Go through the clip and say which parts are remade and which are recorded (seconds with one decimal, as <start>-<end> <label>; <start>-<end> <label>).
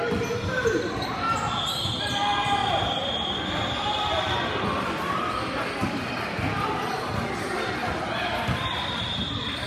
0.0-2.6 recorded; 2.6-4.5 remade; 4.5-7.8 recorded; 7.8-9.7 remade